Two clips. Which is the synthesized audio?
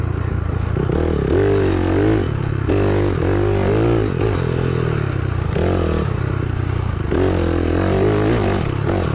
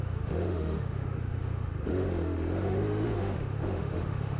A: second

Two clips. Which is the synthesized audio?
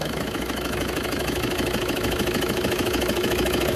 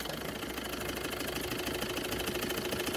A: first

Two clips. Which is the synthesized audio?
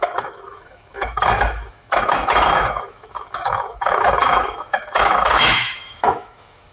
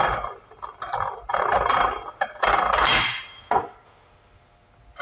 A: first